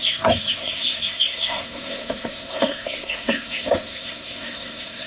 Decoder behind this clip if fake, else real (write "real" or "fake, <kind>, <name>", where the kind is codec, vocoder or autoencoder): fake, codec, SNAC